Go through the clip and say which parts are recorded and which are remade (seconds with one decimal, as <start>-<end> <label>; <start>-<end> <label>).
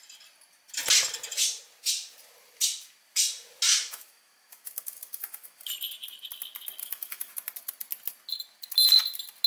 0.0-3.7 recorded; 3.7-5.7 remade; 5.7-6.8 recorded; 6.8-7.3 remade; 7.3-9.5 recorded